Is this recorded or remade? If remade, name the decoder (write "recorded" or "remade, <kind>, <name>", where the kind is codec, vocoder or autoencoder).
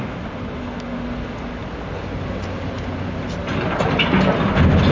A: recorded